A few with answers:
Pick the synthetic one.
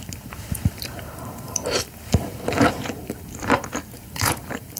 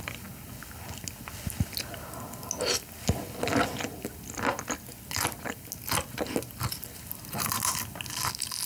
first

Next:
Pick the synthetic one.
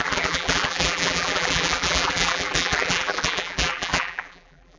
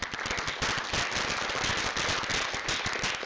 first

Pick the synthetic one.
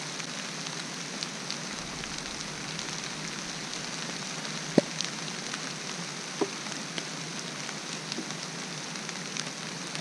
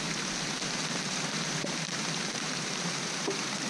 second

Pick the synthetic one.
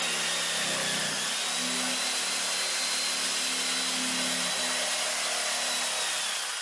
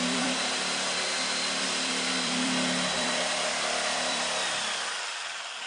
second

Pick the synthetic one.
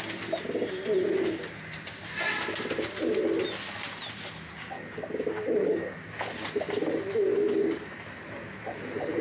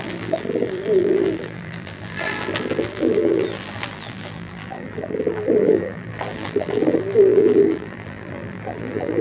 second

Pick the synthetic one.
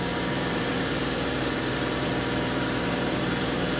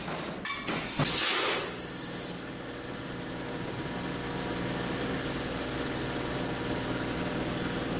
first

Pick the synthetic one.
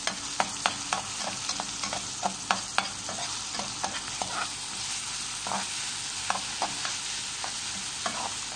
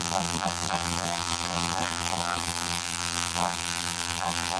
second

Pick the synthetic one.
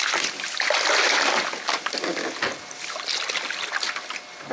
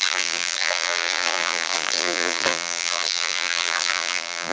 second